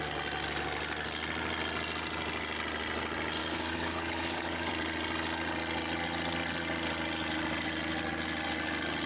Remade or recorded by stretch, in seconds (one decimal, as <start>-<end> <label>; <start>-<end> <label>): 0.0-3.4 recorded; 3.4-4.7 remade; 4.7-9.1 recorded